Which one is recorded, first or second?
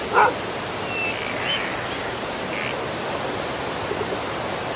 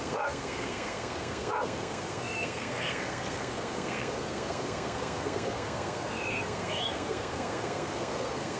first